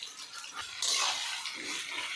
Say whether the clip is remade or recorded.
recorded